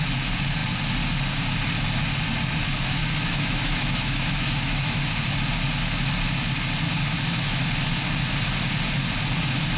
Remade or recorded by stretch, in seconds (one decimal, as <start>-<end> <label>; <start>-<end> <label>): 0.0-3.0 recorded; 3.0-5.0 remade; 5.0-9.8 recorded

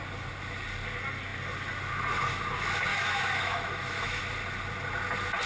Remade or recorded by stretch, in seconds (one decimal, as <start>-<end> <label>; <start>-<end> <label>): 0.0-2.9 recorded; 2.9-4.2 remade; 4.2-5.5 recorded

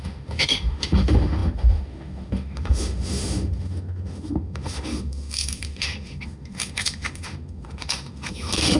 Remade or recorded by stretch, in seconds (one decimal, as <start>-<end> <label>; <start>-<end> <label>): 0.0-8.8 remade

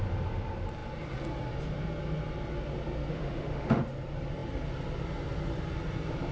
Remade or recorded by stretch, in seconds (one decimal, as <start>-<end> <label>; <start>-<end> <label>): 0.0-3.1 recorded; 3.1-3.8 remade; 3.8-6.3 recorded